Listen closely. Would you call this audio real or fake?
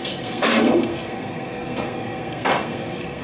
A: fake